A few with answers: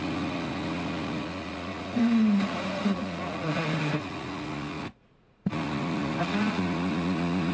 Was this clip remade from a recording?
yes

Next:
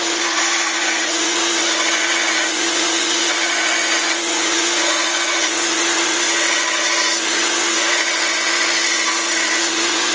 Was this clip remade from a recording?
yes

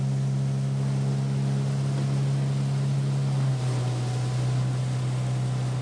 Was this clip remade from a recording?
no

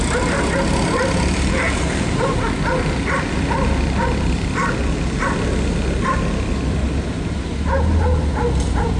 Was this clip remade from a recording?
no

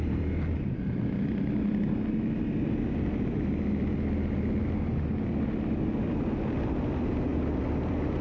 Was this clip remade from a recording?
no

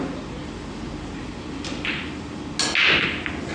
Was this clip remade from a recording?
no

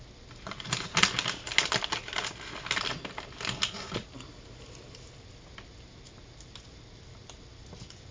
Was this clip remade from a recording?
no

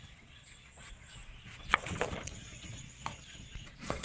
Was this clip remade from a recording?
yes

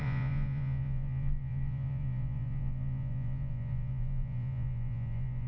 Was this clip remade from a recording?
yes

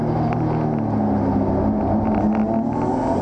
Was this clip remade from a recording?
no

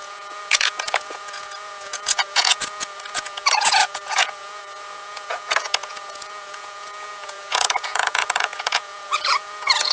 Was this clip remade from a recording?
yes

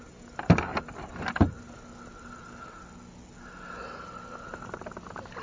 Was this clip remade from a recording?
no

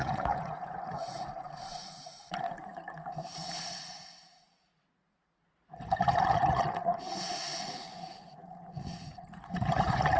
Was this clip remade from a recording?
yes